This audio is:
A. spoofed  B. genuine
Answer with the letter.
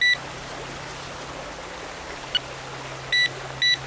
B